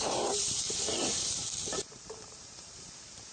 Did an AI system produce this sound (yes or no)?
yes